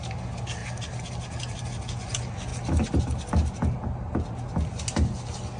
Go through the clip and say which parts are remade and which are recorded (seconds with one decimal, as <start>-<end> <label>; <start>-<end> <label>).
0.0-5.6 recorded

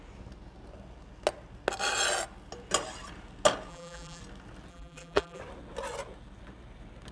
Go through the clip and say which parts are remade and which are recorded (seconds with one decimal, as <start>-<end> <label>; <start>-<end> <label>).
0.0-3.7 recorded; 3.7-4.2 remade; 4.2-4.7 recorded; 4.7-5.4 remade; 5.4-7.1 recorded

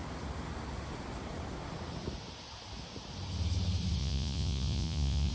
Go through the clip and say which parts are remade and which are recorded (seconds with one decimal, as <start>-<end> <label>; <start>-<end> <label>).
0.0-4.0 recorded; 4.0-5.3 remade

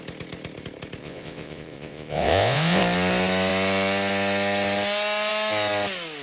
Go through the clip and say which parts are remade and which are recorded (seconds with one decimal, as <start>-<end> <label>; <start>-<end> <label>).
0.0-1.0 recorded; 1.0-2.8 remade; 2.8-6.2 recorded

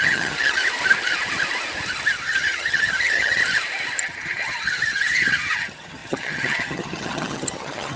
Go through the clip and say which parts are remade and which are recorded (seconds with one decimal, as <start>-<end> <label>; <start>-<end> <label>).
0.0-0.6 remade; 0.6-2.2 recorded; 2.2-3.4 remade; 3.4-4.0 recorded; 4.0-8.0 remade